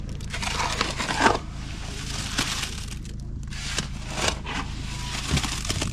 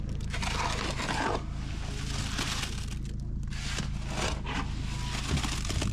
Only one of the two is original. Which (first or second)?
second